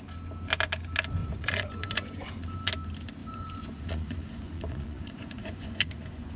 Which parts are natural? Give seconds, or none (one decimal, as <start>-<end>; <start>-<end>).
0.0-1.2; 2.7-3.2